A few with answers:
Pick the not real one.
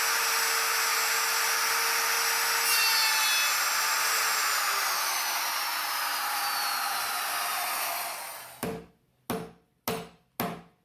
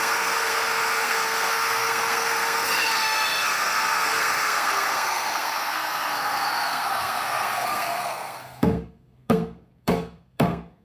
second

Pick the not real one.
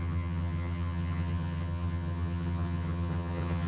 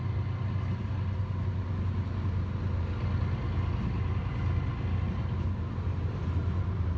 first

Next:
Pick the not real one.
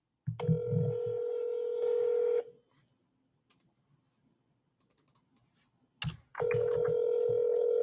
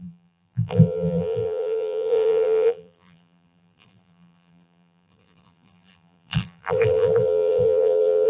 second